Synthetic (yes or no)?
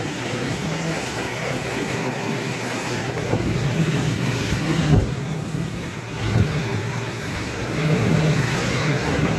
yes